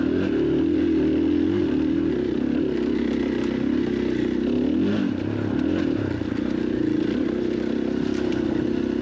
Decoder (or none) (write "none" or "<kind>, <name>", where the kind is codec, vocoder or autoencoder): none